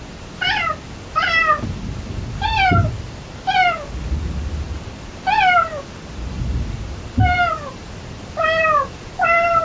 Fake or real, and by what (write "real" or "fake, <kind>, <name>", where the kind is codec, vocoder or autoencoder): fake, vocoder, BigVGAN v2